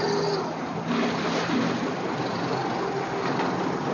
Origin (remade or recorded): recorded